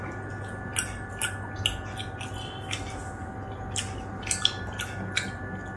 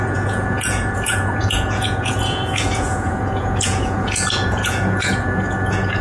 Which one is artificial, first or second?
second